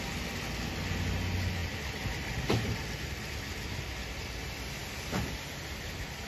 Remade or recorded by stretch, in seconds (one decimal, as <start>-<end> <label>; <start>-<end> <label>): 0.0-6.3 recorded